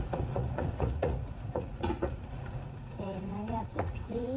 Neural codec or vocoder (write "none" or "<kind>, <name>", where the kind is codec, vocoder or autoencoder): vocoder, Vocos